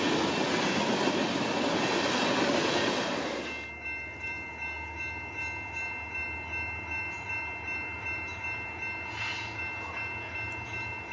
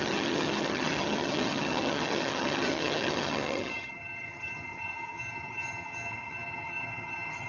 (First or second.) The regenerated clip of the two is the second